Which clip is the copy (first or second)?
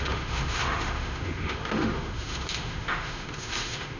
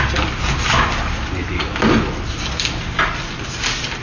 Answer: first